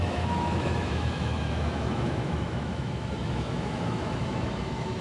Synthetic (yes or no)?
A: yes